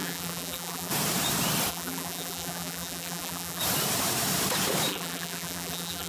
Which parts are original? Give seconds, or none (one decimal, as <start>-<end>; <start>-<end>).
0.9-1.7; 3.6-4.9